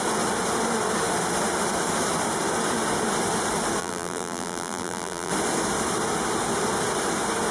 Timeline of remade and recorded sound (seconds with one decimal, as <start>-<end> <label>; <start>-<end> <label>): 0.0-3.8 recorded; 3.8-5.3 remade; 5.3-7.5 recorded